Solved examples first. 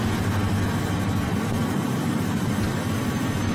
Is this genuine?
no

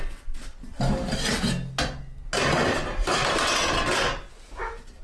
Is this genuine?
yes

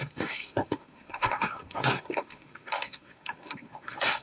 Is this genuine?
no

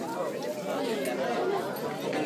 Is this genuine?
yes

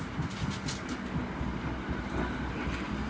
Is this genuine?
yes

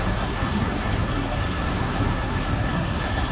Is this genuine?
no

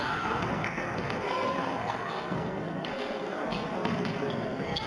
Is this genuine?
no